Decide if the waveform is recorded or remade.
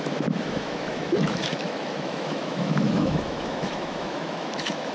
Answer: remade